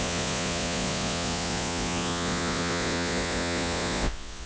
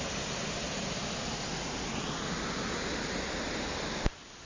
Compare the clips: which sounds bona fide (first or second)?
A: second